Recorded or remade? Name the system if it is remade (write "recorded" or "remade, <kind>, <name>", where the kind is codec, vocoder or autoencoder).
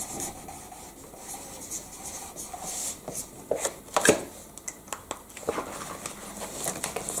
recorded